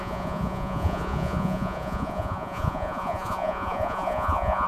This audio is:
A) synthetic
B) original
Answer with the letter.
A